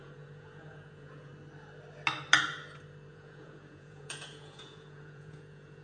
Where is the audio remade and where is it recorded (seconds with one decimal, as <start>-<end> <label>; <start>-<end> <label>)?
0.0-1.3 remade; 1.3-3.1 recorded; 3.1-5.8 remade